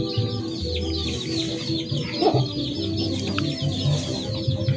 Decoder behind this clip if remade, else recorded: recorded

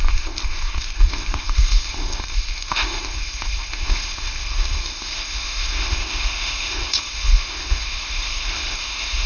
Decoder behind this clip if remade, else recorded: remade, codec, ZipCodec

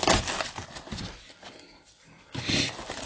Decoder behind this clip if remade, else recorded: recorded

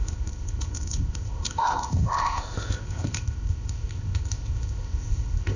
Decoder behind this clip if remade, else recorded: remade, codec, ZipCodec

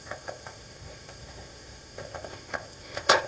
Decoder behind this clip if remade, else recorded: remade, codec, ZipCodec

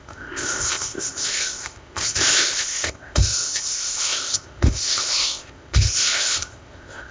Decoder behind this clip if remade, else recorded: remade, codec, ZipCodec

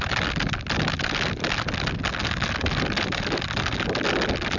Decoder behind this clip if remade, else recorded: recorded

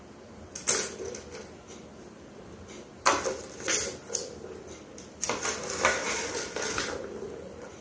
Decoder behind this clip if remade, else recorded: recorded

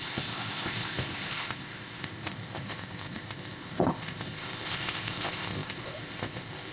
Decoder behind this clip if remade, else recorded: remade, codec, ZipCodec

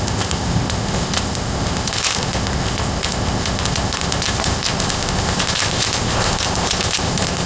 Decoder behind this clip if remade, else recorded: remade, codec, ZipCodec